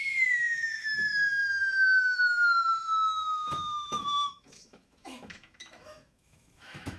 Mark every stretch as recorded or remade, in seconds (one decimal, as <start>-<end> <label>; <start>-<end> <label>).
0.0-7.0 remade